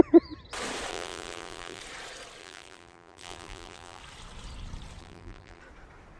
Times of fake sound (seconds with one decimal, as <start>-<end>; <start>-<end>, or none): 0.9-1.8; 2.4-4.0; 5.0-5.6